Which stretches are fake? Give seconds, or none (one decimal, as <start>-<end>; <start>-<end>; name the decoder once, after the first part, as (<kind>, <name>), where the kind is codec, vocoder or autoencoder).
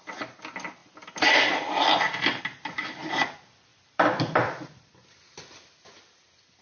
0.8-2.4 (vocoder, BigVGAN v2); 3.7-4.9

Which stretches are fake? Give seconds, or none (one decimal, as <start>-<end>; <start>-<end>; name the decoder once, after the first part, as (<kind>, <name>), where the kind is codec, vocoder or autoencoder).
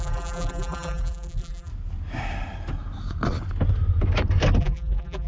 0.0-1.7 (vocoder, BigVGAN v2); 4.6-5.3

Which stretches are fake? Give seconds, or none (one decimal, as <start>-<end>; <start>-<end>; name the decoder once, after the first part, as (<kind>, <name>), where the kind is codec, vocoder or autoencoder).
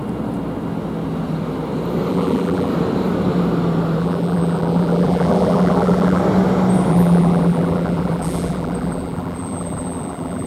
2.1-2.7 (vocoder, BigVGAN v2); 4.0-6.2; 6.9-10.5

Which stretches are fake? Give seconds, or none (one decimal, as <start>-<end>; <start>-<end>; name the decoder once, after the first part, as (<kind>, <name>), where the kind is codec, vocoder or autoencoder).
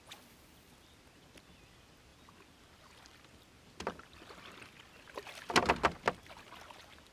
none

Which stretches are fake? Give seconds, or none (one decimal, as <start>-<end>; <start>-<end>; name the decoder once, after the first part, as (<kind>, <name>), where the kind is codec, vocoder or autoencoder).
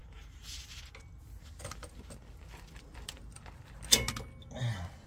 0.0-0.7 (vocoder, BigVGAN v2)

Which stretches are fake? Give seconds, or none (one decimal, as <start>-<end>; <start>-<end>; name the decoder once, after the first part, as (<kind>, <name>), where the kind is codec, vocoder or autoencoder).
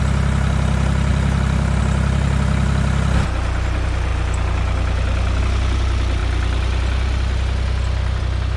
1.1-1.8 (vocoder, BigVGAN v2); 4.1-5.4; 6.2-8.2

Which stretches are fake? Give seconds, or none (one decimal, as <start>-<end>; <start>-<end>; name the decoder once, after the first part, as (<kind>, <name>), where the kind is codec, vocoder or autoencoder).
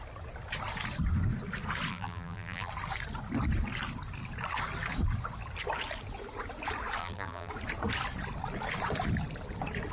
1.9-2.7 (vocoder, BigVGAN v2); 7.0-7.5